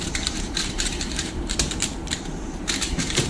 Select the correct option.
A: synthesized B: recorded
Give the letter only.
A